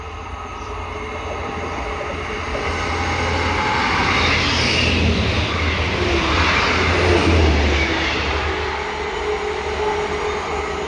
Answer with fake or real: real